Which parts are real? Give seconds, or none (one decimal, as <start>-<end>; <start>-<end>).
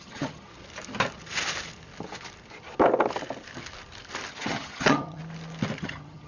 0.5-4.3; 5.2-5.8